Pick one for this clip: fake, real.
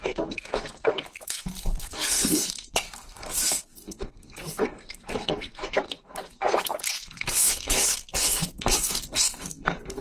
fake